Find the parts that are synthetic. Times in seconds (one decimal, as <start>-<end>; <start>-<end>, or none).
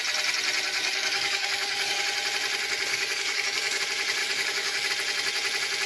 0.8-2.0; 2.9-3.8; 4.2-4.9